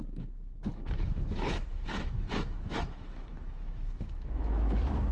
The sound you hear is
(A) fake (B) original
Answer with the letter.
A